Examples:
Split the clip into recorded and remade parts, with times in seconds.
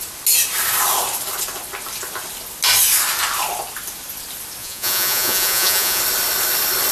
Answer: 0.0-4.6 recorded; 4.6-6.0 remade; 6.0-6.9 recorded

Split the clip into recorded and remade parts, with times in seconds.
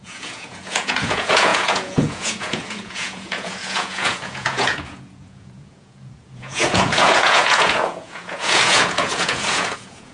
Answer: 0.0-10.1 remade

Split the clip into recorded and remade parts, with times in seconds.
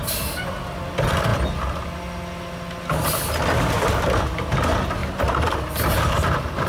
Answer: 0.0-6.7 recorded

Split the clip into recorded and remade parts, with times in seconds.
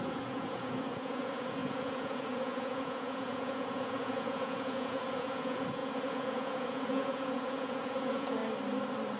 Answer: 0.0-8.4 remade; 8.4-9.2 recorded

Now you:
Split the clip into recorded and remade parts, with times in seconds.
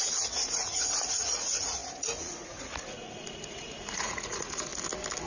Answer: 0.0-4.7 remade; 4.7-5.3 recorded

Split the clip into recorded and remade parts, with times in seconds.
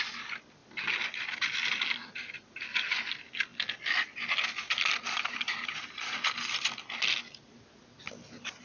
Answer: 0.0-8.6 recorded